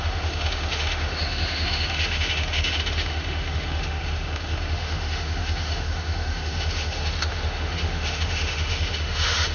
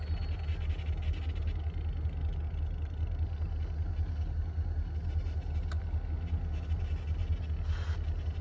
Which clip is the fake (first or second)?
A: first